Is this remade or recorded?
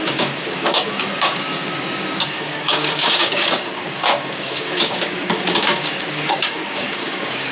remade